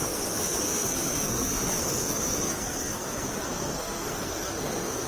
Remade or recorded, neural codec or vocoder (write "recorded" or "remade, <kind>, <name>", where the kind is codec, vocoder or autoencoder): remade, codec, SNAC